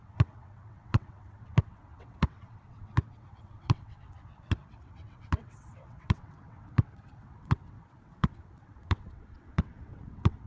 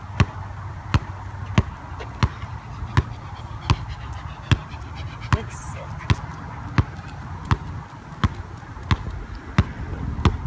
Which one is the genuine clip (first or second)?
second